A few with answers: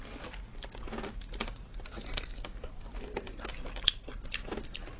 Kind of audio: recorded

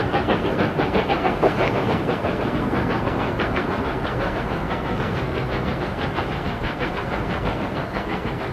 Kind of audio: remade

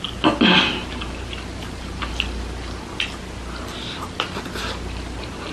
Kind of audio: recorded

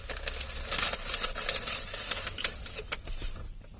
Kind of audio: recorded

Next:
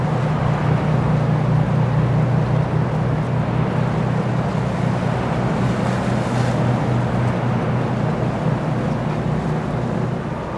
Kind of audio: recorded